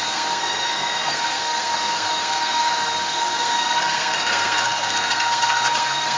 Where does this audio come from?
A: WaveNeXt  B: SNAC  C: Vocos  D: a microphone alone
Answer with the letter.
B